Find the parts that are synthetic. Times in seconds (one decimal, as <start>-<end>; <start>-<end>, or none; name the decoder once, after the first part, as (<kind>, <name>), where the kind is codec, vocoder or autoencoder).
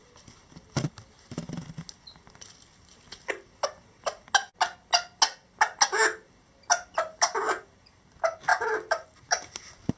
none